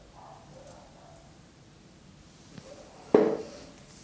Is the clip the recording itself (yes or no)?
yes